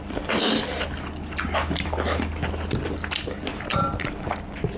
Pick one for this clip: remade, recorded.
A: recorded